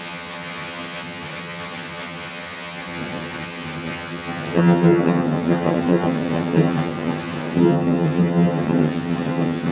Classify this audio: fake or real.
fake